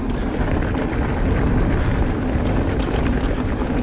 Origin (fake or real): real